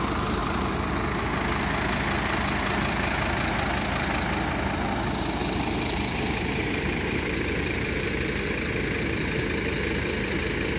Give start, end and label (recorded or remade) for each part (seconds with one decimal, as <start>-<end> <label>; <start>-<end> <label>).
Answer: 0.0-0.4 recorded; 0.4-0.9 remade; 0.9-5.4 recorded; 5.4-8.1 remade; 8.1-10.8 recorded